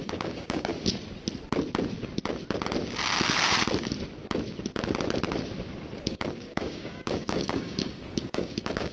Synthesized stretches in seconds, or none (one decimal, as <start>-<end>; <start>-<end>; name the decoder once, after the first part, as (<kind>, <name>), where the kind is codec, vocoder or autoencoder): 0.0-0.7 (codec, DAC); 6.0-8.9